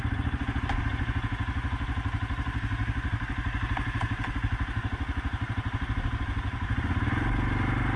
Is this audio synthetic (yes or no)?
no